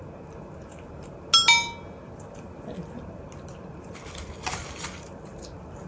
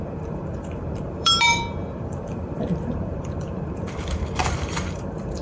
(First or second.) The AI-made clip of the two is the second